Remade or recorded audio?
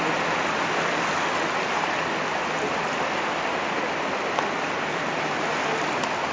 recorded